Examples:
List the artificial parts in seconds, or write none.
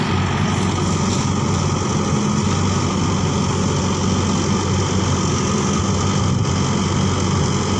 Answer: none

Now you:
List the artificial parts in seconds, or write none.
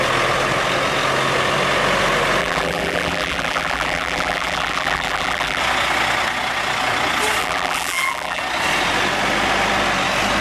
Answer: 2.4-5.6; 7.4-8.4